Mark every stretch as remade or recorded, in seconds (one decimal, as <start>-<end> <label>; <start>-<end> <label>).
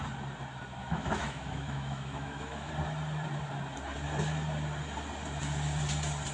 0.0-0.8 recorded; 0.8-2.7 remade; 2.7-6.3 recorded